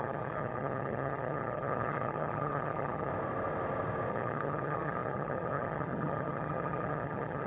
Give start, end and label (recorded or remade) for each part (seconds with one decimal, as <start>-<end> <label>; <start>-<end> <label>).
0.0-3.1 remade; 3.1-4.1 recorded; 4.1-7.5 remade

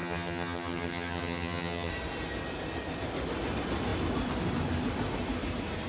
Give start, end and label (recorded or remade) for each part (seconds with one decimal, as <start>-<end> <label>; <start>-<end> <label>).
0.0-1.9 remade; 1.9-5.9 recorded

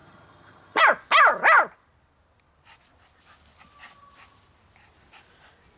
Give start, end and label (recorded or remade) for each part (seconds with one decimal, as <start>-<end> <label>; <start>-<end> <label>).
0.0-0.8 remade; 0.8-5.8 recorded